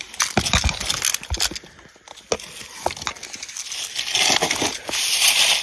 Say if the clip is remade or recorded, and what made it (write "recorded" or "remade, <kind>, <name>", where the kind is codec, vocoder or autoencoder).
recorded